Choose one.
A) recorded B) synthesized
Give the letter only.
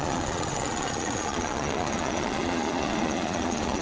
B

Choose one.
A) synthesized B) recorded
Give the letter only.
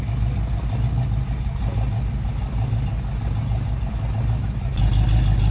B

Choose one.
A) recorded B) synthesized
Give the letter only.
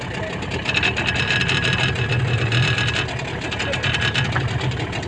A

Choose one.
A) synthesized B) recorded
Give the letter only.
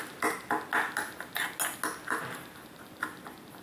B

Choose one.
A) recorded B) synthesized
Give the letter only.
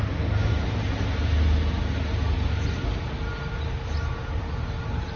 A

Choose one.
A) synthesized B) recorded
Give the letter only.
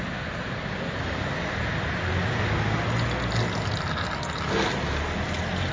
B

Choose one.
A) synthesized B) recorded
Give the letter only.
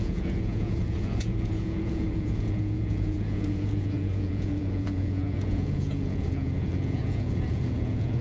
A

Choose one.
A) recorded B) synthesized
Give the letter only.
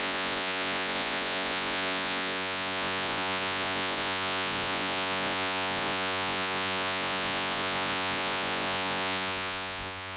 B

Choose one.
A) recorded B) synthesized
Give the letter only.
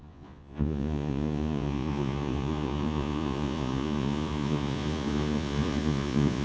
B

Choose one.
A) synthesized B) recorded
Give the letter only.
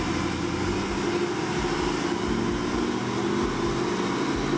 B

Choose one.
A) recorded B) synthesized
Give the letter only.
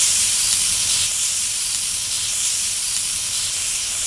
A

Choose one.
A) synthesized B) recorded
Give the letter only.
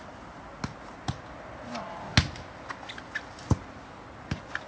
B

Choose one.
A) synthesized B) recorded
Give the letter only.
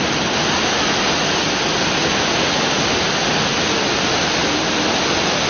B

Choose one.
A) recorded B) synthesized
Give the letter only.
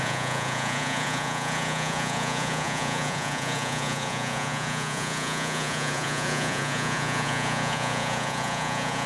B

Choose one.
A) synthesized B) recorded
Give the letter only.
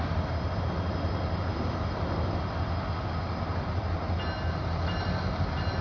B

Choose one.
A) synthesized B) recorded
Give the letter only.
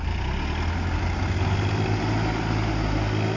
B